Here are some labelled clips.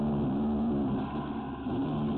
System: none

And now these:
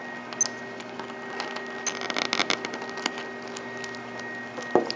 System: none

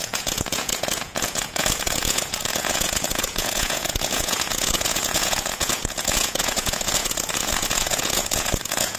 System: vocoder, Vocos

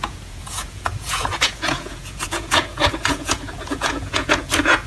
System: vocoder, Vocos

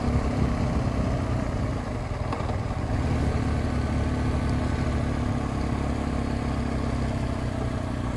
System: none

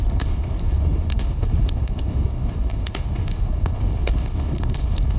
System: codec, HILCodec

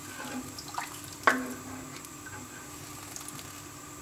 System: none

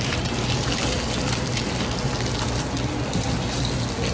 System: none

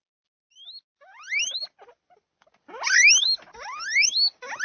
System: none